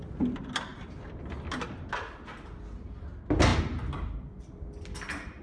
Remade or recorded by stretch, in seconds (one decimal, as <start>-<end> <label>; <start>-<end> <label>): 0.0-0.7 recorded; 0.7-1.2 remade; 1.2-5.4 recorded